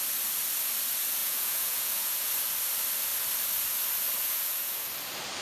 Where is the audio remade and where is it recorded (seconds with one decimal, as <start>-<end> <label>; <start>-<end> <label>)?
0.0-1.2 recorded; 1.2-2.3 remade; 2.3-4.2 recorded; 4.2-4.9 remade; 4.9-5.4 recorded